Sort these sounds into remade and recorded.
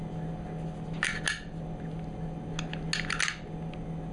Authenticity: recorded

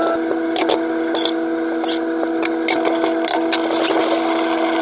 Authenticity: recorded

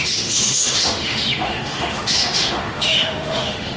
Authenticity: remade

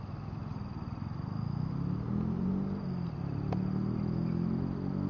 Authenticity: recorded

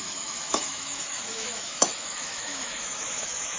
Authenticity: remade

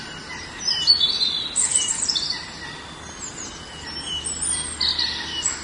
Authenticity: recorded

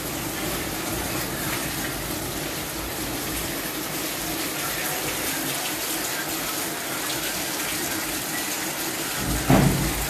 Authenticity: recorded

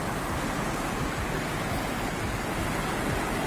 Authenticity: recorded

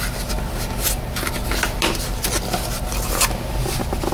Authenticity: recorded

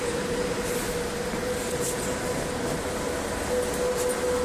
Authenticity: recorded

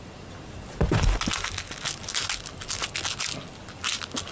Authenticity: recorded